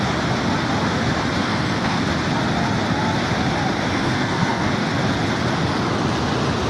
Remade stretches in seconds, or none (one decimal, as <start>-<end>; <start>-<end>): 1.4-2.0; 3.9-4.7